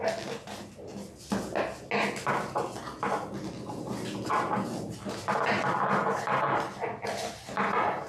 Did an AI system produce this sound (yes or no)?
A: no